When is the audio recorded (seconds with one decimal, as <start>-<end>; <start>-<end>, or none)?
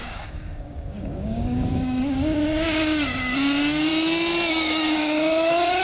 3.9-4.5